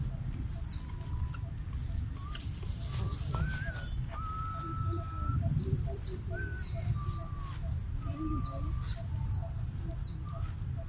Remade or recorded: recorded